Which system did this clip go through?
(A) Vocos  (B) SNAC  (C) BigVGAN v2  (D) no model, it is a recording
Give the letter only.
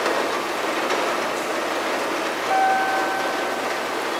C